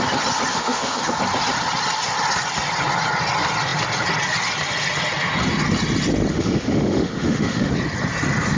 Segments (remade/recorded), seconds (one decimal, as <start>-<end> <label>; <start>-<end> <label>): 0.0-0.5 recorded; 0.5-1.0 remade; 1.0-6.3 recorded; 6.3-7.7 remade; 7.7-8.6 recorded

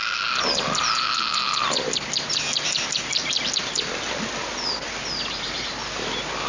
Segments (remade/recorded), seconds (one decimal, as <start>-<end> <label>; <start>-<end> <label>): 0.0-6.5 recorded

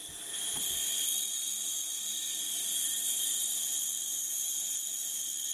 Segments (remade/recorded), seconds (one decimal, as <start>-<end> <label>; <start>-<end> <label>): 0.0-2.6 recorded; 2.6-3.6 remade; 3.6-5.5 recorded

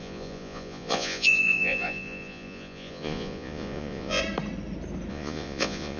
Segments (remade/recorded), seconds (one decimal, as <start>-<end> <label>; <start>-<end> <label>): 0.0-4.2 remade; 4.2-5.1 recorded; 5.1-6.0 remade

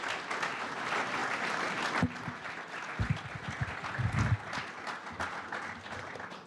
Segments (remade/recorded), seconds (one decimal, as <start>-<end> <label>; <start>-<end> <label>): 0.0-6.5 recorded

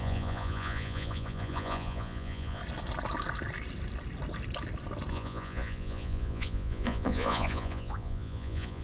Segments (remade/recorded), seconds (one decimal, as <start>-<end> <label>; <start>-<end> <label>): 0.0-2.6 remade; 2.6-5.1 recorded; 5.1-8.8 remade

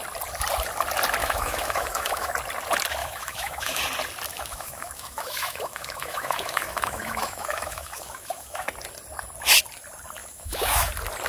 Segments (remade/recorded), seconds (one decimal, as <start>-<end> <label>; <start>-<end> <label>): 0.0-1.2 recorded; 1.2-2.3 remade; 2.3-3.0 recorded; 3.0-3.8 remade; 3.8-4.3 recorded; 4.3-8.7 remade; 8.7-10.2 recorded; 10.2-10.9 remade; 10.9-11.3 recorded

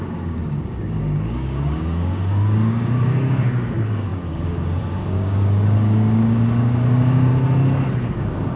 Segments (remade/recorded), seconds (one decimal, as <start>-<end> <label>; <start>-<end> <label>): 0.0-7.3 remade; 7.3-8.2 recorded; 8.2-8.6 remade